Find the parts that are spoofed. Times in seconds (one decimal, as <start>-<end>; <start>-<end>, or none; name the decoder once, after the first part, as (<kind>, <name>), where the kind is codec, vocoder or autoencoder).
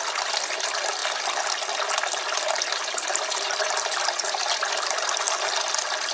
none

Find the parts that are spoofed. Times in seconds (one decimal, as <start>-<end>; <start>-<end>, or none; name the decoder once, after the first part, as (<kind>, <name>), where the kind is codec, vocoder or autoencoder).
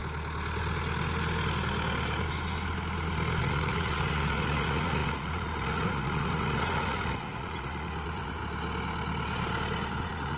3.4-8.4 (vocoder, Vocos); 10.0-10.4